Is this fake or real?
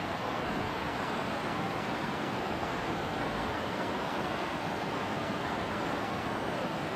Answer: fake